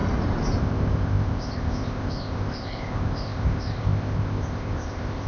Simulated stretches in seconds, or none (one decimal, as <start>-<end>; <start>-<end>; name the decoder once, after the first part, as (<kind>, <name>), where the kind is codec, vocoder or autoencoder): 0.6-5.3 (codec, ZipCodec)